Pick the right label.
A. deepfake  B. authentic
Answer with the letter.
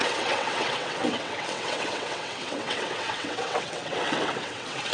A